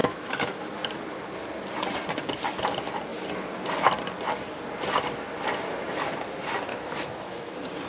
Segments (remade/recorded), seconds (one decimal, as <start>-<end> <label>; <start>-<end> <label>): 0.0-0.6 remade; 0.6-6.7 recorded; 6.7-7.5 remade; 7.5-7.9 recorded